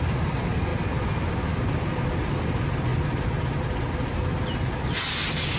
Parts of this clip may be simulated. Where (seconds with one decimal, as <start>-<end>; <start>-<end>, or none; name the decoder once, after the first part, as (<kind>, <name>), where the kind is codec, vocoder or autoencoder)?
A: 0.0-0.7 (vocoder, BigVGAN v2); 2.0-2.9